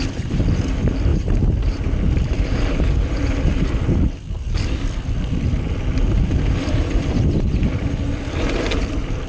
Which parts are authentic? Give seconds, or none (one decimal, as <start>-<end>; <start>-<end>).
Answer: none